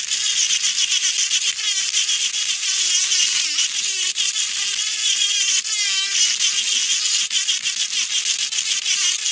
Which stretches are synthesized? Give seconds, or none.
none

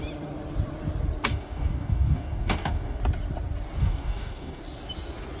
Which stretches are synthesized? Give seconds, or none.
1.3-3.0; 3.8-4.6

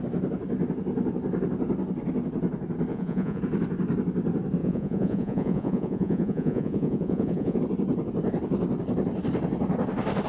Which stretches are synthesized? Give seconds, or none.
2.9-3.4; 4.6-7.6